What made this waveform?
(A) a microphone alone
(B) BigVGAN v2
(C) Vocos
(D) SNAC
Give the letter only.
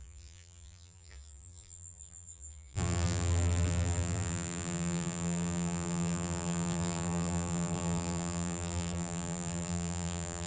B